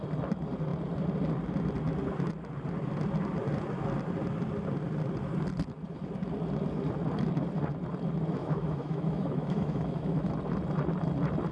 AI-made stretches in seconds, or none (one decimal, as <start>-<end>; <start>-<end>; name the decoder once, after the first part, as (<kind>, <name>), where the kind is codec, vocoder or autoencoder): 8.4-10.3 (autoencoder, DAC-VAE)